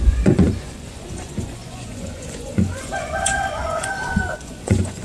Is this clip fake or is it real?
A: fake